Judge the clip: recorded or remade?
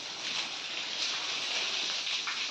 recorded